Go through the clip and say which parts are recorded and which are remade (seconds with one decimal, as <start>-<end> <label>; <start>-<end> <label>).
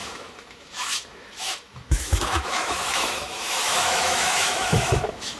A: 0.0-5.4 remade